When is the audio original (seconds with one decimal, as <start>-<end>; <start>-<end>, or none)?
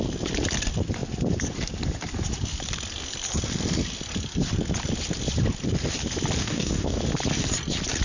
0.0-6.4; 7.0-8.0